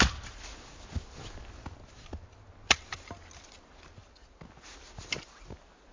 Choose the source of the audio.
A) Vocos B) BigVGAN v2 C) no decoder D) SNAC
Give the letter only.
C